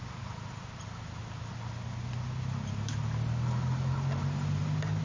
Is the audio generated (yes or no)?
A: no